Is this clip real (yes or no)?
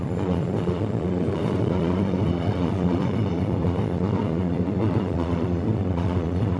no